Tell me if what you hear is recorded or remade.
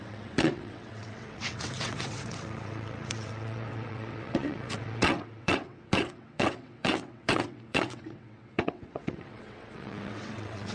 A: remade